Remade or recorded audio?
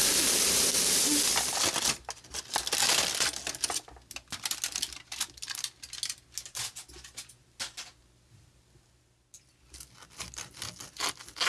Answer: recorded